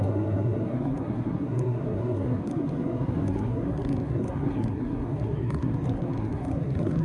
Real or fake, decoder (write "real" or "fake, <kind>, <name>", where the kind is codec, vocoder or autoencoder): fake, codec, SNAC